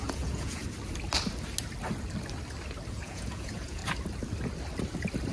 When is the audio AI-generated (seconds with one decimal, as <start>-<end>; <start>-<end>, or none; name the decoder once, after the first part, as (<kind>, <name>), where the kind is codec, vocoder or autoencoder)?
0.0-0.6 (vocoder, Vocos); 2.9-3.8